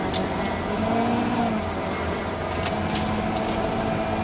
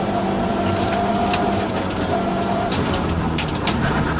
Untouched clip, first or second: first